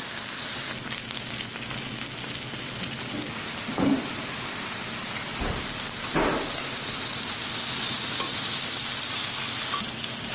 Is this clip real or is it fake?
real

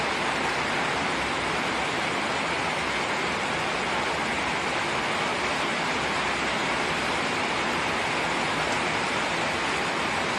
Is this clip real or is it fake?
real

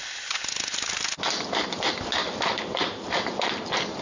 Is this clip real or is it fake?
real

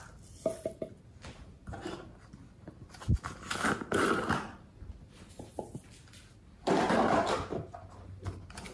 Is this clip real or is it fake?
real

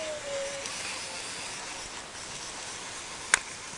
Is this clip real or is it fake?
real